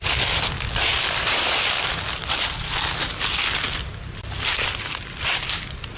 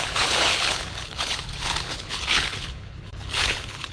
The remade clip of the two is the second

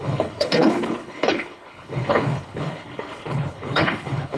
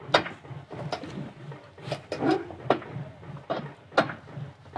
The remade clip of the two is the first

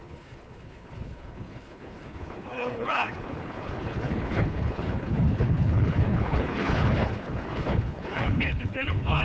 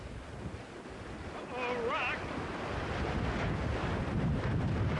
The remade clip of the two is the first